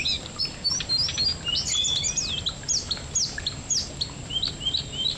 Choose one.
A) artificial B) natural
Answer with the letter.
B